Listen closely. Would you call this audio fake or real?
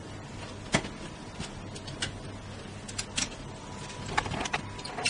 real